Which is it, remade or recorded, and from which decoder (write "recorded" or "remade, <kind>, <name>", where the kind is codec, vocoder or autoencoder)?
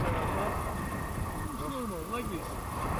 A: recorded